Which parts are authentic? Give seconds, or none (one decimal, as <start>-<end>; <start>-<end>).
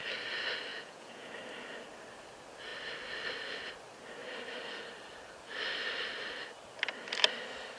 0.0-0.7; 1.3-7.8